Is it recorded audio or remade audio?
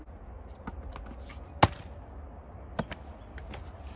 recorded